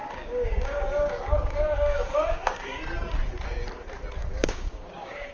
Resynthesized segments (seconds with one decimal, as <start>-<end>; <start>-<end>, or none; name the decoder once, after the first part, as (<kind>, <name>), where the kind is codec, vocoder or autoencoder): 0.0-2.8 (codec, DAC); 4.2-5.3